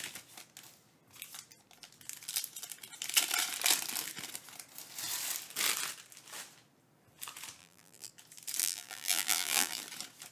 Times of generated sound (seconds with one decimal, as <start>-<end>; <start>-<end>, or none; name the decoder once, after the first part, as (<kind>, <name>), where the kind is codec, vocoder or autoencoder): 7.6-8.1 (vocoder, BigVGAN v2); 8.6-9.8